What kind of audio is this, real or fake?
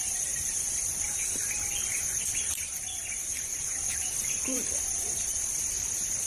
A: fake